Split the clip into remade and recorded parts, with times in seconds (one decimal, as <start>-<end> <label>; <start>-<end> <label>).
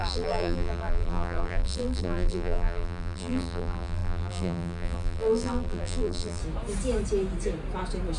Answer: 0.0-6.4 remade; 6.4-8.2 recorded